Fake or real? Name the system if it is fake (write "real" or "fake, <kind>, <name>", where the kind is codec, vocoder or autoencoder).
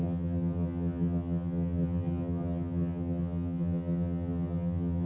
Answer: fake, vocoder, HiFi-GAN